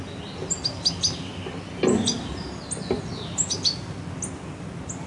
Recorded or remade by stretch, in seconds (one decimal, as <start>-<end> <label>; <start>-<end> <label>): 0.0-5.1 recorded

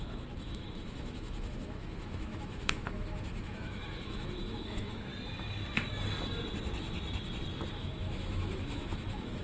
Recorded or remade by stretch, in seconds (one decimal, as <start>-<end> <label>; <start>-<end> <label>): 0.0-5.1 remade; 5.1-7.7 recorded; 7.7-9.4 remade